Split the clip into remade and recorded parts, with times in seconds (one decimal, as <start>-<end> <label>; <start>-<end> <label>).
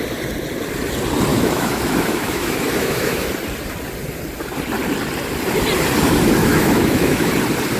0.0-1.3 recorded; 1.3-3.3 remade; 3.3-6.4 recorded; 6.4-7.3 remade; 7.3-7.8 recorded